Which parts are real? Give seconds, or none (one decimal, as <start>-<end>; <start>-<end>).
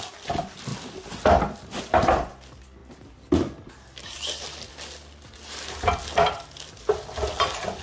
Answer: 0.0-7.8